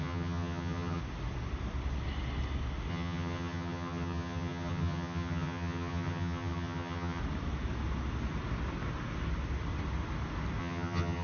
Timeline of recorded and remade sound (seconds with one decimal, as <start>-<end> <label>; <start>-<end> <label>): 0.0-1.0 remade; 1.0-2.9 recorded; 2.9-7.2 remade; 7.2-10.6 recorded; 10.6-11.2 remade